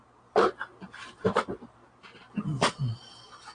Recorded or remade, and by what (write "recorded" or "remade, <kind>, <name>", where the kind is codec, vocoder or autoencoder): recorded